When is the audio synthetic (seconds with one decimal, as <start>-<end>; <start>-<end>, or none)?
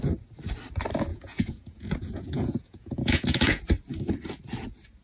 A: 1.1-3.6